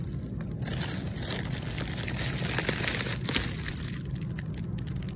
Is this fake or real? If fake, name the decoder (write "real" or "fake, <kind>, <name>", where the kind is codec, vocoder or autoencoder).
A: real